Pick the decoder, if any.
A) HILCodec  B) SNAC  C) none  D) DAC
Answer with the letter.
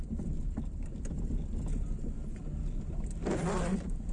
C